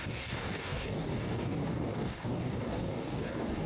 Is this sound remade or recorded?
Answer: remade